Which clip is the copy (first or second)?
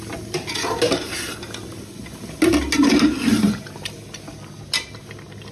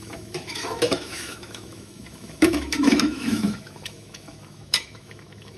second